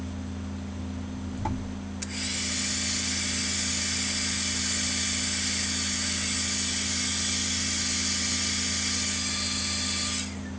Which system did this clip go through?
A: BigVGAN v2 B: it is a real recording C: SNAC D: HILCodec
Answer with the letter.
B